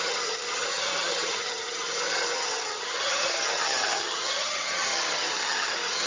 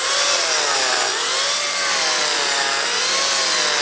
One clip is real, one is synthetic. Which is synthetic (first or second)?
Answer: first